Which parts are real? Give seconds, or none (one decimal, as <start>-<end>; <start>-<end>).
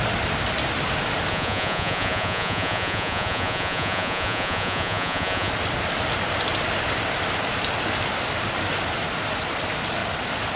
0.0-1.3; 5.5-10.6